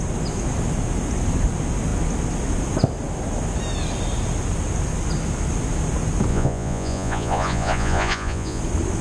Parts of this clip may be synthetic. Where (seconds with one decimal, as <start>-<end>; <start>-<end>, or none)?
6.3-8.6